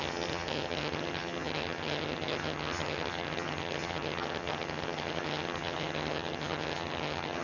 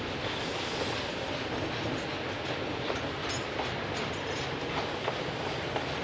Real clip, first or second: second